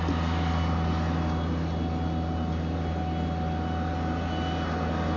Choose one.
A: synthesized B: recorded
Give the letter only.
B